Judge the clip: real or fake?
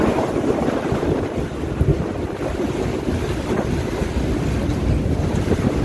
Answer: real